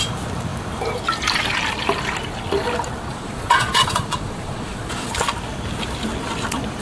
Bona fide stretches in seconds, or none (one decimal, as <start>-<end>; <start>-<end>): 0.0-3.1; 5.1-6.8